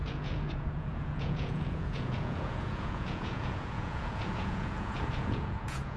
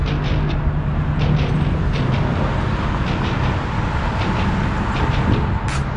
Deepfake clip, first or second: first